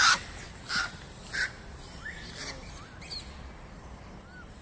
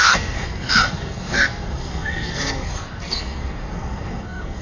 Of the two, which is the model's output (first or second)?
second